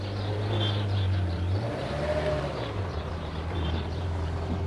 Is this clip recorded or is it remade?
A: remade